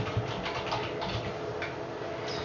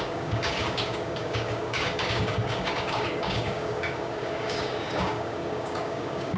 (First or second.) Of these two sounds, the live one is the first